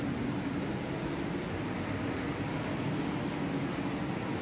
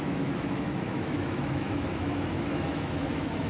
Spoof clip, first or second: second